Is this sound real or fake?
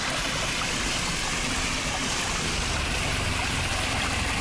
real